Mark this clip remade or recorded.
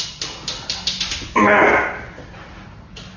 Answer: recorded